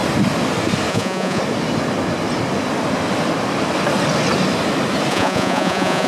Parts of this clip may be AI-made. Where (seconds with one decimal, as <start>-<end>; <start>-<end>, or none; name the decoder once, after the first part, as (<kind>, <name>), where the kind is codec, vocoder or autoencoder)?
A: 0.9-1.4 (vocoder, Vocos); 5.1-6.1